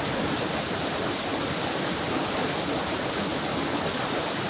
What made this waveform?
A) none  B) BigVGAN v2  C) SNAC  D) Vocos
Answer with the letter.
A